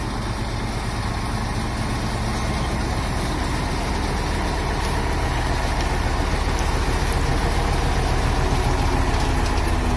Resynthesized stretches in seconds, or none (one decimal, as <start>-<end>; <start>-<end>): none